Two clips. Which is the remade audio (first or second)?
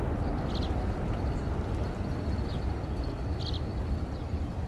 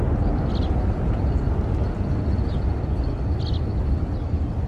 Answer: first